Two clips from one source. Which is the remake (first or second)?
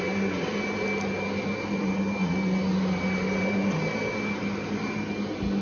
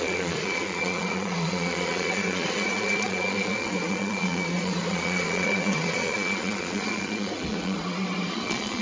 second